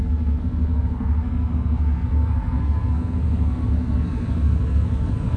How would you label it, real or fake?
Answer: fake